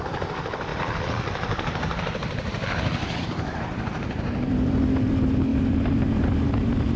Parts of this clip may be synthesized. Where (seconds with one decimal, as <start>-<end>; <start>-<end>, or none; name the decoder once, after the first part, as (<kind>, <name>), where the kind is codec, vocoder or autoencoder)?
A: 0.0-7.0 (vocoder, BigVGAN v2)